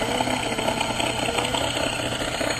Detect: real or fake real